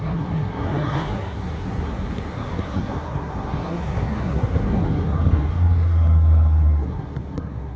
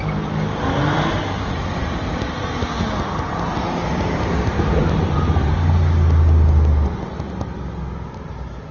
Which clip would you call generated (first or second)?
first